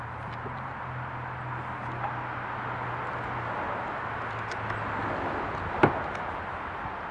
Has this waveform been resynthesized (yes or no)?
no